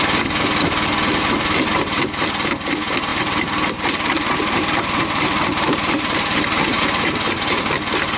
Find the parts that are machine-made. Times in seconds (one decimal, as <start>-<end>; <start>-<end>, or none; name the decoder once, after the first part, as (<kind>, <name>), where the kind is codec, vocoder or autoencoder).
1.1-1.7 (vocoder, BigVGAN v2); 3.1-7.6